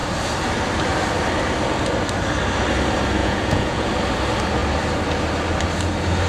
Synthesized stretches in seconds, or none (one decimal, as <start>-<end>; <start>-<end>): 3.2-3.9